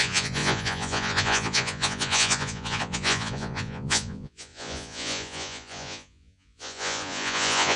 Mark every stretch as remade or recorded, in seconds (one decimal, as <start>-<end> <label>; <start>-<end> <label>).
0.0-7.8 remade